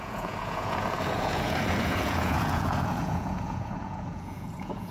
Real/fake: fake